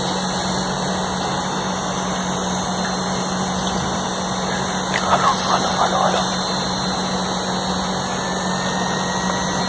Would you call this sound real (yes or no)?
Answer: yes